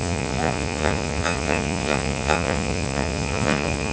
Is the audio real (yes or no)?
no